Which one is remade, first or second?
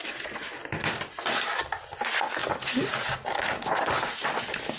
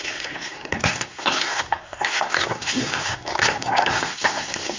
second